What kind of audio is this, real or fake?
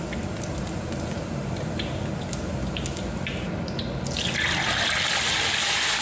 real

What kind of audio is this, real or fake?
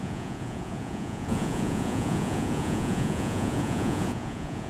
fake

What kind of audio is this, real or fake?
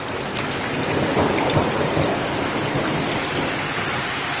real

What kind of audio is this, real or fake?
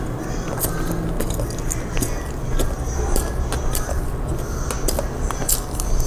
real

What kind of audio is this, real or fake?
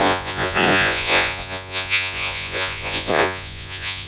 fake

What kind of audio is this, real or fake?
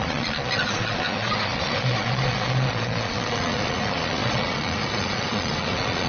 fake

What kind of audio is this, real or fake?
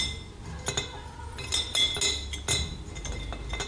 real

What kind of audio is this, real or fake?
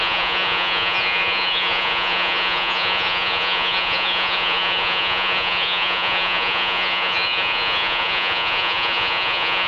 fake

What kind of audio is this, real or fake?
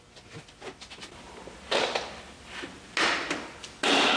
real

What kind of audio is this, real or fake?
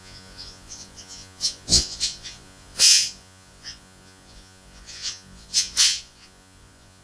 fake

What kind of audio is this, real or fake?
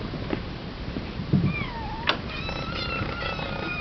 real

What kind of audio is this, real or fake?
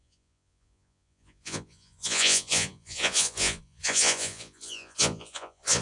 fake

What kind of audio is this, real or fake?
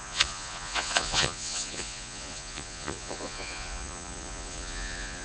fake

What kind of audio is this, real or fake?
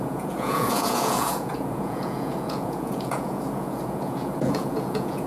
fake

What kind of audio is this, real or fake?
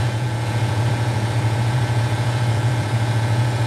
fake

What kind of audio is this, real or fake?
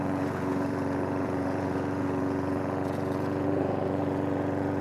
fake